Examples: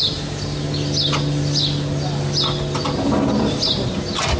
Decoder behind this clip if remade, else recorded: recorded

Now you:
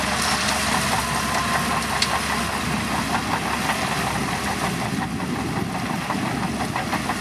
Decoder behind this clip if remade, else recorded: recorded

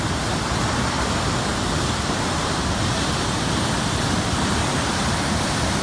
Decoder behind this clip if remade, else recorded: recorded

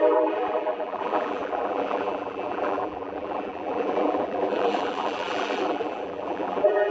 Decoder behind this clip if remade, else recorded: remade, vocoder, BigVGAN v2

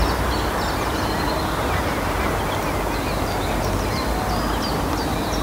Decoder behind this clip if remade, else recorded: recorded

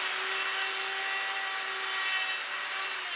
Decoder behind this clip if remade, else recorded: recorded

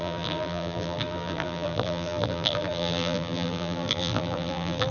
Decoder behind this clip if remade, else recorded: remade, vocoder, BigVGAN v2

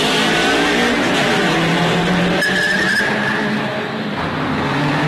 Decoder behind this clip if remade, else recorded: recorded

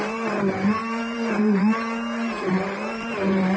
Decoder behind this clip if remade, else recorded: remade, vocoder, BigVGAN v2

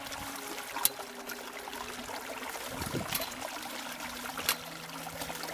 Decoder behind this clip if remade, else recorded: recorded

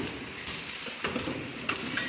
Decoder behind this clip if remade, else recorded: recorded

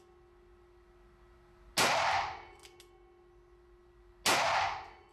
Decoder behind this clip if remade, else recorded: recorded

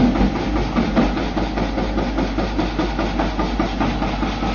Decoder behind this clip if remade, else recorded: recorded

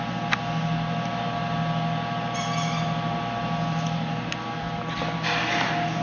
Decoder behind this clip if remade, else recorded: recorded